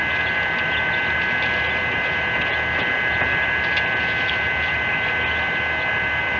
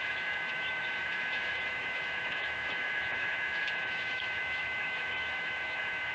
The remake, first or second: second